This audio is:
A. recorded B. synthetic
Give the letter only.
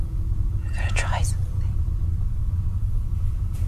B